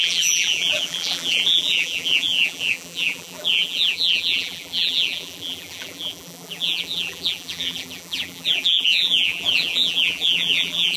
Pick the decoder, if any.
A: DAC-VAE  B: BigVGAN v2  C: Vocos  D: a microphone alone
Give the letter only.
B